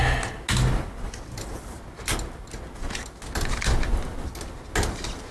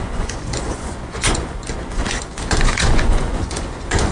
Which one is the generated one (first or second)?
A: second